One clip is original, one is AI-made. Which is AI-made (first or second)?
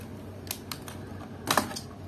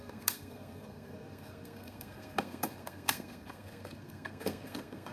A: second